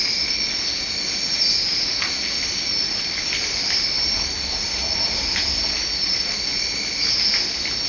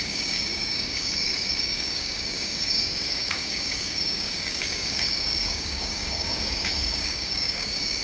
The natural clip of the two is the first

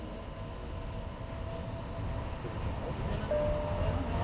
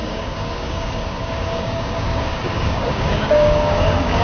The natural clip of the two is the first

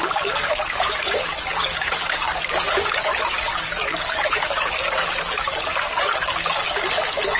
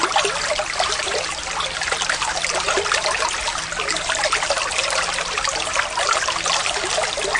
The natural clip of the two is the second